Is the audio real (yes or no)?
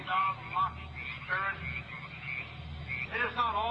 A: yes